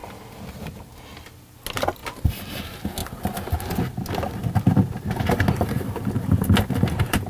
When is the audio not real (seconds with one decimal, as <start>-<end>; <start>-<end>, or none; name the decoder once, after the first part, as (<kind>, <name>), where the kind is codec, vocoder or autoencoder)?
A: none